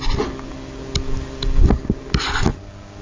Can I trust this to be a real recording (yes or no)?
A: yes